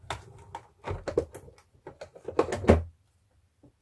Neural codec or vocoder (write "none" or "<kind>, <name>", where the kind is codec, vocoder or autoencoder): none